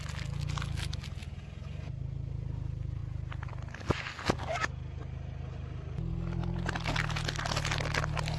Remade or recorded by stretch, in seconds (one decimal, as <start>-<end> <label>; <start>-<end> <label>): 0.0-8.4 recorded